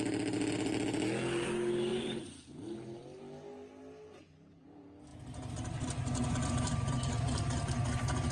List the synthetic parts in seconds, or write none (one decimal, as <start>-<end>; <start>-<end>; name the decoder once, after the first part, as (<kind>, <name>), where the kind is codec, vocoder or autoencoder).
none